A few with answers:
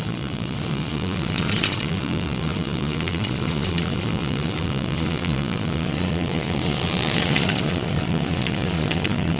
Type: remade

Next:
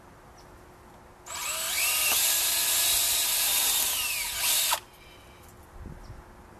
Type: recorded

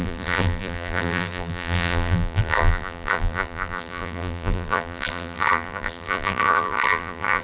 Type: remade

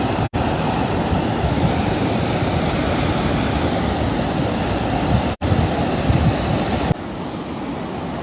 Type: recorded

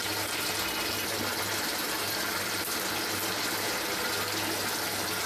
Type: recorded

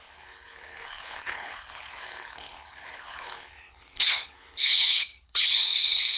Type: remade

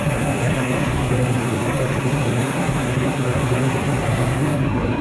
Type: remade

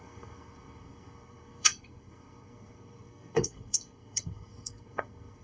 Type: remade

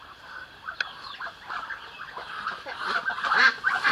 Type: recorded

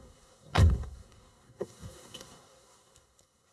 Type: remade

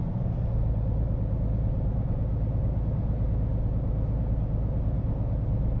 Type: recorded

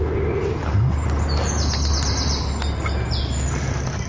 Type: recorded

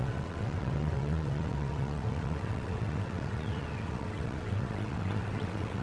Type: remade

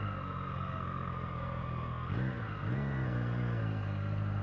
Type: remade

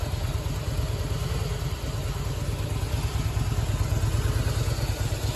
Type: recorded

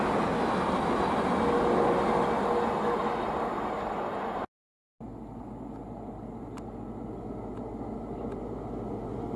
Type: recorded